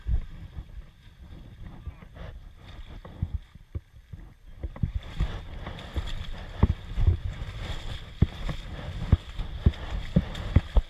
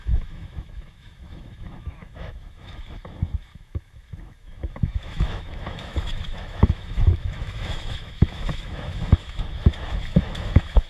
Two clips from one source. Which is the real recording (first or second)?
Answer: first